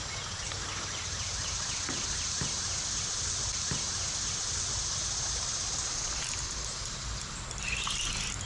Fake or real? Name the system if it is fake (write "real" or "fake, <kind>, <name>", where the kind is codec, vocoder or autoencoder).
real